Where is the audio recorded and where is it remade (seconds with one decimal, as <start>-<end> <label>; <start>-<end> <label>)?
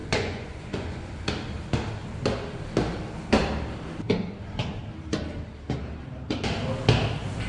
0.0-1.3 remade; 1.3-7.5 recorded